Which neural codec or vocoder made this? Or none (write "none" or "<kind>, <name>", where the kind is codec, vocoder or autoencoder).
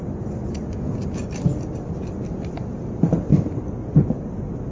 none